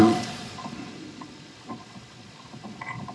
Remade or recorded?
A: remade